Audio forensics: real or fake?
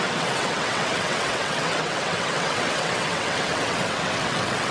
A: fake